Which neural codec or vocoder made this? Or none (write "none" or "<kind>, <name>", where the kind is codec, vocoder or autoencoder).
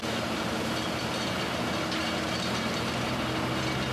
none